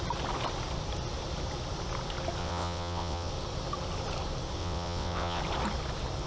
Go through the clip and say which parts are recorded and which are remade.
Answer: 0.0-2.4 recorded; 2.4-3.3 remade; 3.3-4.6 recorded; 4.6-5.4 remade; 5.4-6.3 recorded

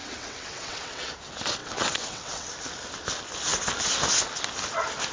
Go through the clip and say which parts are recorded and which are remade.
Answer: 0.0-1.1 remade; 1.1-1.6 recorded; 1.6-2.5 remade; 2.5-5.1 recorded

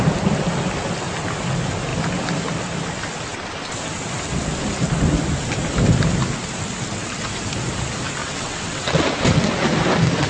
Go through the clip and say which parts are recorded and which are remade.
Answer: 0.0-8.2 recorded; 8.2-8.9 remade; 8.9-10.3 recorded

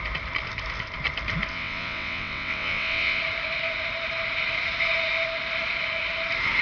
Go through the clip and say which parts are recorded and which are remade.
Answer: 0.0-1.5 recorded; 1.5-3.2 remade; 3.2-6.6 recorded

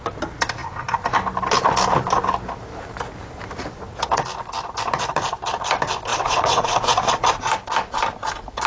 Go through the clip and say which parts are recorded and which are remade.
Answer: 0.0-6.1 recorded; 6.1-7.1 remade; 7.1-8.7 recorded

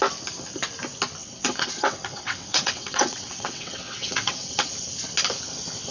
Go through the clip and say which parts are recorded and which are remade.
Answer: 0.0-1.2 recorded; 1.2-4.7 remade; 4.7-5.9 recorded

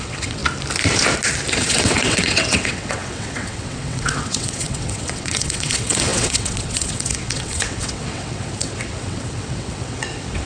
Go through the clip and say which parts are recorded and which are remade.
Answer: 0.0-0.4 remade; 0.4-1.5 recorded; 1.5-10.5 remade

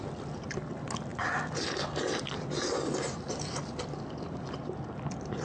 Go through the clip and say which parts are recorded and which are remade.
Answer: 0.0-5.4 recorded